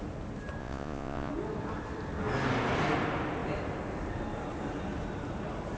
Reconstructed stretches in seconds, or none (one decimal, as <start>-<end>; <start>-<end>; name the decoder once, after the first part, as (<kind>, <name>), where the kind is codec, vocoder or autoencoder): 0.6-1.3 (vocoder, Vocos)